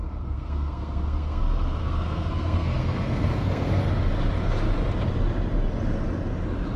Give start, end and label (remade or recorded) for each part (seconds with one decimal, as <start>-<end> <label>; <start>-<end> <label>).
0.0-1.4 remade; 1.4-1.8 recorded; 1.8-3.7 remade; 3.7-6.8 recorded